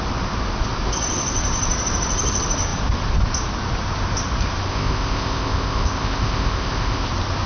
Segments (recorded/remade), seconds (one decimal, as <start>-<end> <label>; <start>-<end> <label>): 0.0-4.7 recorded; 4.7-7.1 remade; 7.1-7.5 recorded